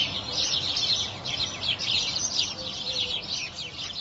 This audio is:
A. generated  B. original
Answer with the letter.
A